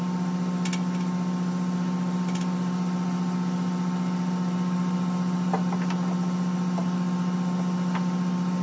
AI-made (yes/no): no